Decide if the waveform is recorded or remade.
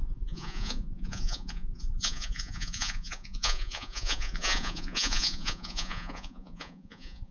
remade